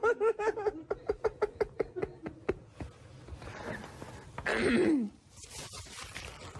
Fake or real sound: real